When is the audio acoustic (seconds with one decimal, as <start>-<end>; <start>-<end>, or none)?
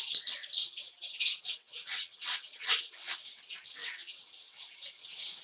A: 0.0-0.6; 3.4-3.8